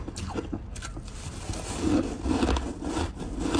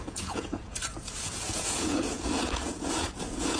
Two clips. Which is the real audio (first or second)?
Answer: first